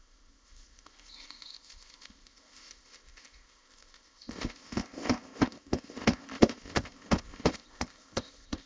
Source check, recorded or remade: remade